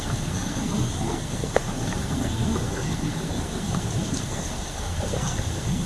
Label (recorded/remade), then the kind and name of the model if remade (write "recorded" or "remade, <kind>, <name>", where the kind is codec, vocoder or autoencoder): remade, codec, SNAC